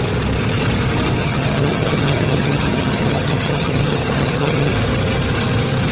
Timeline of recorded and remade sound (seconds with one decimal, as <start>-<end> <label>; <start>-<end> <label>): 0.0-1.2 recorded; 1.2-4.7 remade; 4.7-5.9 recorded